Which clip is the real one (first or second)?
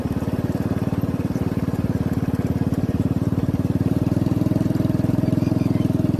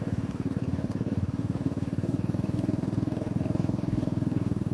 first